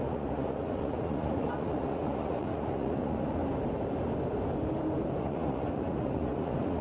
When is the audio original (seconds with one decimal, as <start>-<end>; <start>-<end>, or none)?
3.4-5.2